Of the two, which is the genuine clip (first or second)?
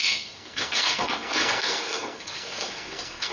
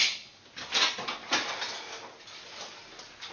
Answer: second